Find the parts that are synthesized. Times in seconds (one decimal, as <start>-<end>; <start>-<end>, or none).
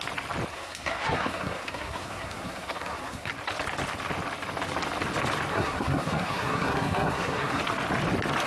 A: 0.5-3.3; 5.5-7.6